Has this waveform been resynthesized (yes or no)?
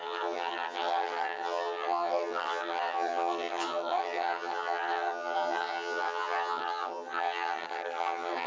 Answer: yes